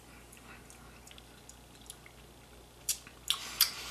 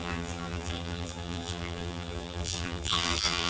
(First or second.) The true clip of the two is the first